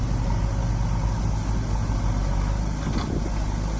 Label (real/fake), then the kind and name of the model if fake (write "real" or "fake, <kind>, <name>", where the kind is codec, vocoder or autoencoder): real